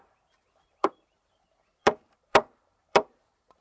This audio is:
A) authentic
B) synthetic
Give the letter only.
B